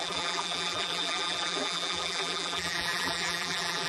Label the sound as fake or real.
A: fake